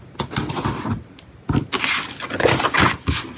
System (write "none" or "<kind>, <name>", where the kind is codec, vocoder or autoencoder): none